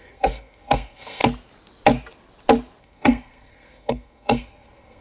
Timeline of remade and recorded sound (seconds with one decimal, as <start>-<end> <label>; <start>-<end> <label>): 0.0-1.2 remade; 1.2-2.8 recorded; 2.8-5.0 remade